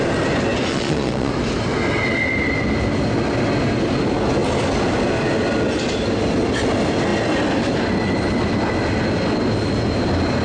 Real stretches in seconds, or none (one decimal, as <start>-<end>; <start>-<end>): 0.0-0.7; 1.3-10.4